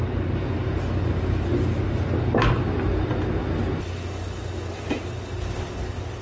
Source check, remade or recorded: recorded